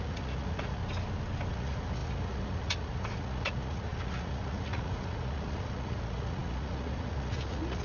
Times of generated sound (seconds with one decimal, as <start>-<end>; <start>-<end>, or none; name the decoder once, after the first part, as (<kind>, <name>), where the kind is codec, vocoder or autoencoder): 0.0-0.8 (vocoder, Vocos); 1.5-7.8